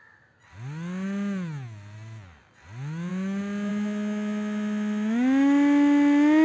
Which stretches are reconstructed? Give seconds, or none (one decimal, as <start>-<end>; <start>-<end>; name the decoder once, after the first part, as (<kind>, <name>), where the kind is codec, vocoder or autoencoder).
none